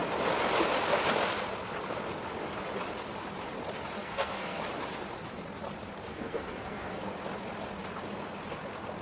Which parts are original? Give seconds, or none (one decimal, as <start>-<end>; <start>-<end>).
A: 0.0-4.0; 4.6-6.1; 7.0-9.0

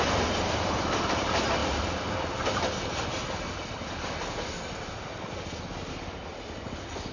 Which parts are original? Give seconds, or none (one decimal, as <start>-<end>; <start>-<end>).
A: 0.0-7.1

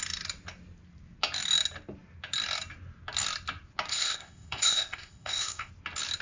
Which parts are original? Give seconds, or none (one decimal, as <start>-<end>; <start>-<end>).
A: 0.0-3.9; 5.7-6.2

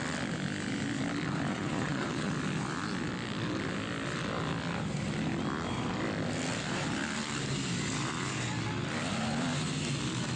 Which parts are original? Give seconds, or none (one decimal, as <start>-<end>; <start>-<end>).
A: 0.0-1.5; 2.3-10.4

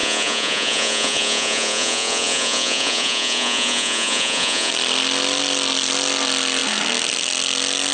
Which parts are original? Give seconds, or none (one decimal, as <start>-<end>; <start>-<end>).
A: 4.7-7.9

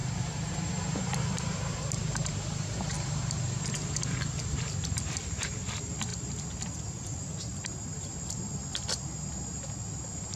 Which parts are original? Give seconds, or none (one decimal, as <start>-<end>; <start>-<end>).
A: 3.4-10.4

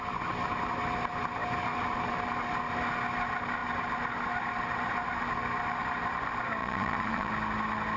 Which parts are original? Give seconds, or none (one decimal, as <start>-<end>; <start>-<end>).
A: 0.0-6.6; 7.3-8.0